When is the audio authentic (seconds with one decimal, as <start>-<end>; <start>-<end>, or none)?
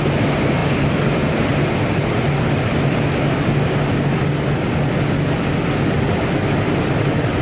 0.0-7.4